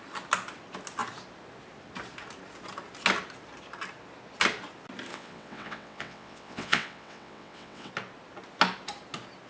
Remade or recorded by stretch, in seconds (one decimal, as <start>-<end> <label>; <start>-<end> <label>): 0.0-5.1 recorded; 5.1-7.9 remade; 7.9-9.5 recorded